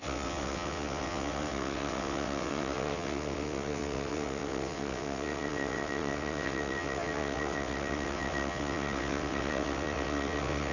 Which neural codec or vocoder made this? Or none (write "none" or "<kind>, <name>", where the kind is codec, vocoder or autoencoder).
vocoder, WaveNeXt